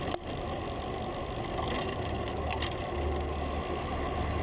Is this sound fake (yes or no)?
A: no